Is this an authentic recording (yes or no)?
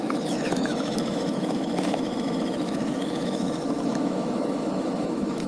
no